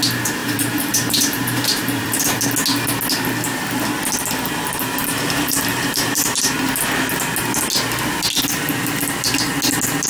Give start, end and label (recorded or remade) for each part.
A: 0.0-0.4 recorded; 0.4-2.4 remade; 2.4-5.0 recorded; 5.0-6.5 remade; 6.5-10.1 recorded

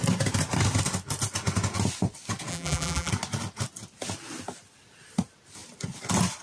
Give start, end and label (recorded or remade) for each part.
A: 0.0-2.5 recorded; 2.5-3.1 remade; 3.1-6.4 recorded

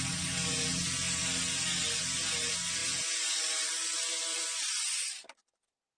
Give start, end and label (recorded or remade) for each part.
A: 0.0-6.0 recorded

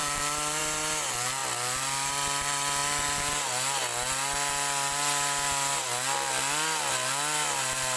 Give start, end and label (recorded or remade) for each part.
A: 0.0-8.0 recorded

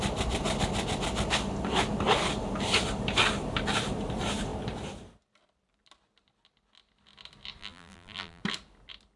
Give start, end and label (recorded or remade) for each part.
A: 0.0-7.6 recorded; 7.6-8.4 remade; 8.4-9.2 recorded

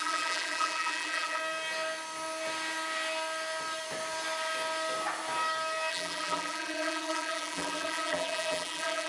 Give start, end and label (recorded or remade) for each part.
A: 0.0-1.4 remade; 1.4-5.9 recorded; 5.9-9.1 remade

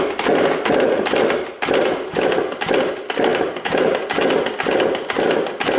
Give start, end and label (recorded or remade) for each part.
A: 0.0-3.3 recorded; 3.3-4.1 remade; 4.1-5.8 recorded